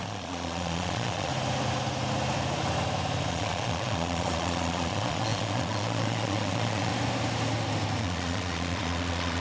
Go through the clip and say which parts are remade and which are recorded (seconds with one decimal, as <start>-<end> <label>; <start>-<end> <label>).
0.0-1.3 remade; 1.3-3.3 recorded; 3.3-6.9 remade; 6.9-8.0 recorded; 8.0-9.4 remade